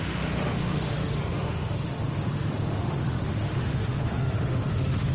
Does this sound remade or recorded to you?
remade